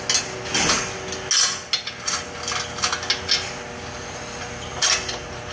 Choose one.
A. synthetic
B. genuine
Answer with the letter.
B